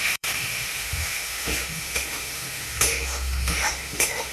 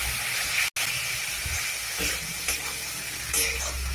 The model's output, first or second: first